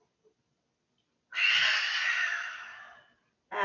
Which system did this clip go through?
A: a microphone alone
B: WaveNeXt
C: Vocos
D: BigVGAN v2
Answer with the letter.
A